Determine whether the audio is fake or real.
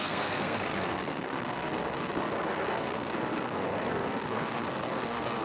fake